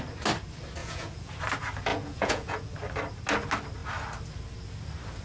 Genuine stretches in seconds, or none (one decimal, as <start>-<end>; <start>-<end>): 0.0-0.8; 1.3-1.9; 2.7-5.2